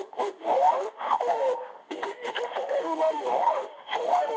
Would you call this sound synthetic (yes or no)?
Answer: yes